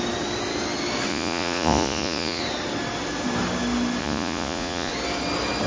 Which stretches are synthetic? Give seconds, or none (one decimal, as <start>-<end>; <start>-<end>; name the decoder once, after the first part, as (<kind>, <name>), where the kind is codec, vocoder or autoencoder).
1.1-2.4 (vocoder, Vocos); 4.0-4.9